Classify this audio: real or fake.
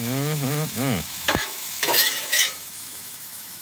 fake